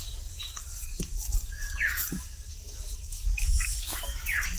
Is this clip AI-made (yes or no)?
yes